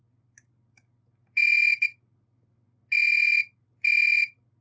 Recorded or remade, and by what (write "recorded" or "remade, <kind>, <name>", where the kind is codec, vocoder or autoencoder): recorded